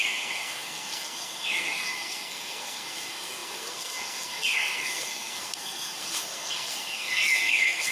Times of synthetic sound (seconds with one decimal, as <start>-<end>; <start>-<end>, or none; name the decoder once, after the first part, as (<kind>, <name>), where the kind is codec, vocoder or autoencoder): 0.0-7.9 (codec, SNAC)